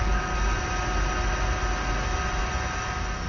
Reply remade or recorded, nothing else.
recorded